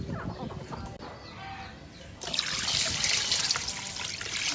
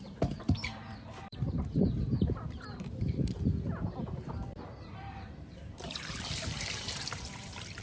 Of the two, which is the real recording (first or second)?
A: first